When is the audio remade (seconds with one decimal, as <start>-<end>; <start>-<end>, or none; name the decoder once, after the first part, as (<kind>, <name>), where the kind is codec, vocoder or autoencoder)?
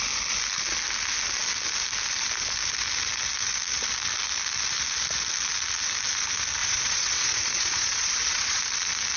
6.6-8.6 (vocoder, Vocos)